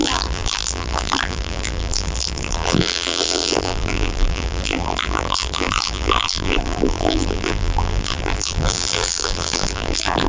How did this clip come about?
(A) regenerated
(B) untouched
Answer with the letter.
A